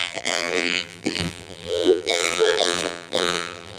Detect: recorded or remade remade